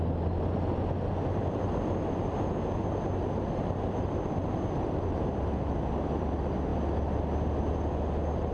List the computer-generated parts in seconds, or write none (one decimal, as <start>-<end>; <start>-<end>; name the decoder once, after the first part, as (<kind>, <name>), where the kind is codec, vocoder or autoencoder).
none